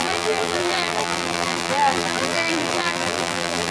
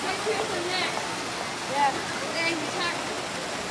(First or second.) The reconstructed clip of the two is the first